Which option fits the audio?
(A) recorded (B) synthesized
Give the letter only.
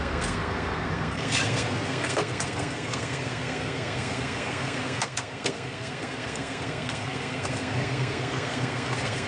B